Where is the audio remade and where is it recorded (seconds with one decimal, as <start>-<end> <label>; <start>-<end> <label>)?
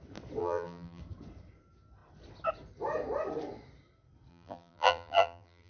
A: 0.0-0.4 recorded; 0.4-1.0 remade; 1.0-4.3 recorded; 4.3-5.7 remade